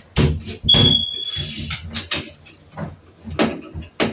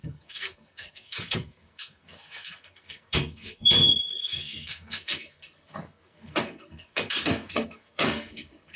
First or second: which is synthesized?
second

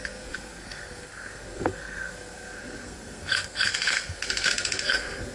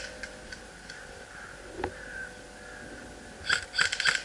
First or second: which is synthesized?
first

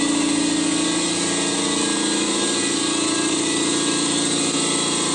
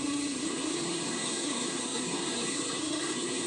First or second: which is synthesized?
second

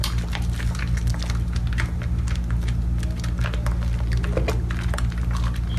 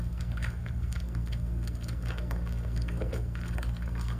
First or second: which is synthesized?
second